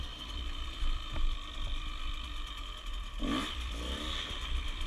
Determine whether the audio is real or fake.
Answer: fake